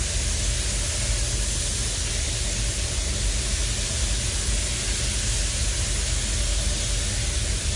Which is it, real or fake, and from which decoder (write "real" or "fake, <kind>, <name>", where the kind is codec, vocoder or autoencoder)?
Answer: real